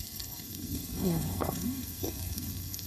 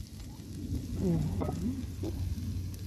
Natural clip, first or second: second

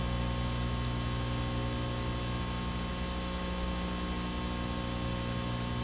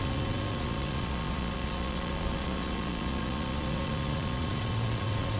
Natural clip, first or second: first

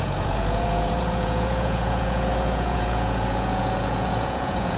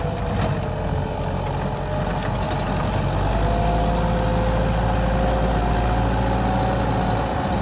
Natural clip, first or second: second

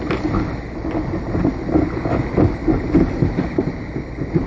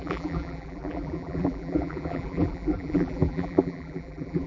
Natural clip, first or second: first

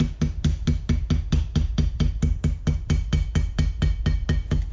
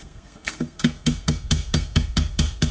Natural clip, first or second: first